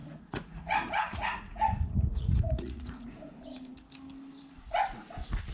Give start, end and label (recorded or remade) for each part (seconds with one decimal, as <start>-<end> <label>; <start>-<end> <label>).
0.0-3.3 remade; 3.3-5.5 recorded